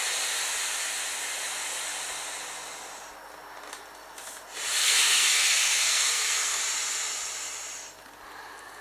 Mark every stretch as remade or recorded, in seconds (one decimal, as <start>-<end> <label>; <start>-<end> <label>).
0.0-4.8 recorded; 4.8-6.6 remade; 6.6-8.8 recorded